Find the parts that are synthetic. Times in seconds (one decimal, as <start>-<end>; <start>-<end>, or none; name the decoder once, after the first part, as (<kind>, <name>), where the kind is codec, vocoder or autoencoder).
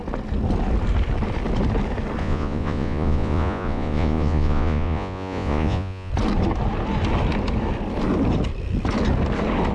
2.2-6.1 (vocoder, Vocos)